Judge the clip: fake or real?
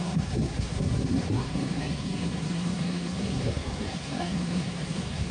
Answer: fake